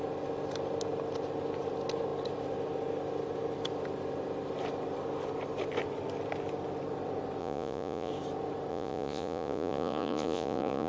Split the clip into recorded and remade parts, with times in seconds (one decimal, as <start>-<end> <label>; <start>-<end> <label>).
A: 0.0-7.4 recorded; 7.4-8.1 remade; 8.1-8.7 recorded; 8.7-10.9 remade